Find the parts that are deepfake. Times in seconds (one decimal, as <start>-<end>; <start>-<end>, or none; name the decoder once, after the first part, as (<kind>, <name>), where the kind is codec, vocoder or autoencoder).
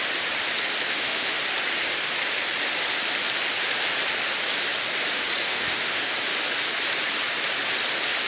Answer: 0.9-1.4 (autoencoder, DAC-VAE); 5.4-6.1